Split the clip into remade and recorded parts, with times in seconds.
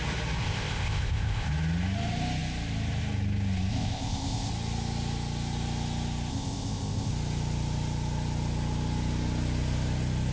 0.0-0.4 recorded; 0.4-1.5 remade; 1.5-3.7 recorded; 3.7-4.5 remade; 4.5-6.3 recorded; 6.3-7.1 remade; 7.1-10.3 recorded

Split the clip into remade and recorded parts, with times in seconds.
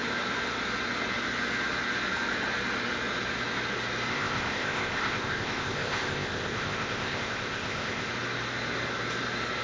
0.0-4.1 recorded; 4.1-8.1 remade; 8.1-9.6 recorded